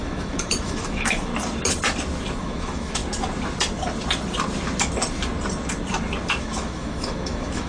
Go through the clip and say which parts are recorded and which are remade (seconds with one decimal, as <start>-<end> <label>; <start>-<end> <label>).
0.0-1.3 remade; 1.3-2.4 recorded; 2.4-3.0 remade; 3.0-6.4 recorded; 6.4-7.7 remade